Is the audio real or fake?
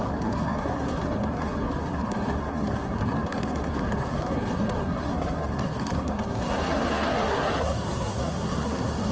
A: fake